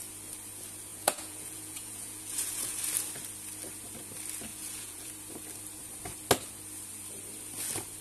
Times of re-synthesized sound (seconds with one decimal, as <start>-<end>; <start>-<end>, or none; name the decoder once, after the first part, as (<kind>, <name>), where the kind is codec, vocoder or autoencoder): 0.9-2.8 (vocoder, Vocos); 4.5-5.1